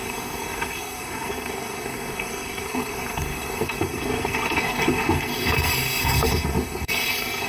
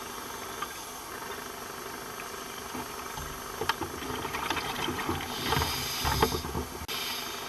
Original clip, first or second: second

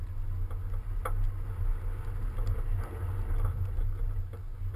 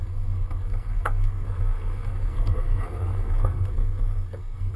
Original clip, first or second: first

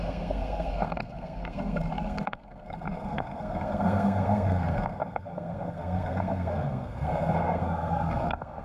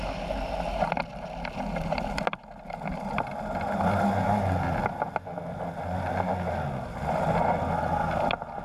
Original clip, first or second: second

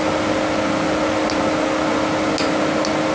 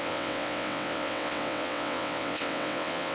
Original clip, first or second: first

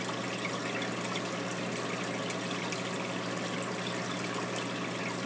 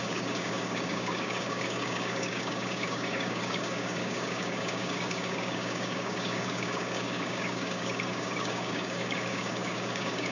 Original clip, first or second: first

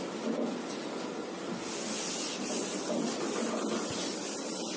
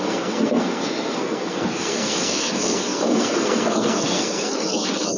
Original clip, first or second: first